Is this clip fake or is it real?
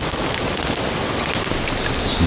real